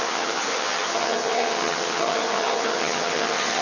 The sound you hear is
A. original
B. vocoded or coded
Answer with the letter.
B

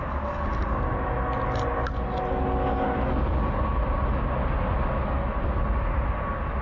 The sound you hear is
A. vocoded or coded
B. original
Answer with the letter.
B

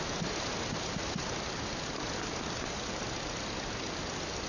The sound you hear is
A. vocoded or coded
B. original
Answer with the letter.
B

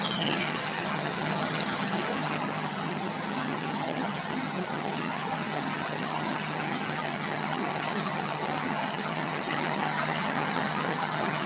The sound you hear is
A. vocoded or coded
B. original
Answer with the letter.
A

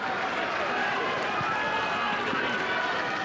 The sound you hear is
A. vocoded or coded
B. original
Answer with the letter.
B